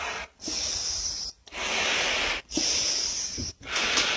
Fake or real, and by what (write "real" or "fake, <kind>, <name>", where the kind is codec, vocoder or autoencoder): real